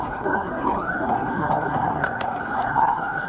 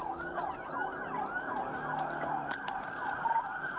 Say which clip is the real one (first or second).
second